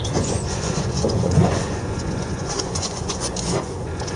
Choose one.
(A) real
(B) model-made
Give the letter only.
B